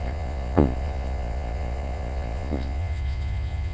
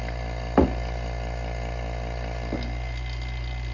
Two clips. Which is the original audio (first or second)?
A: second